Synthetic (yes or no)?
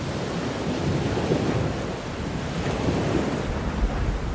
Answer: no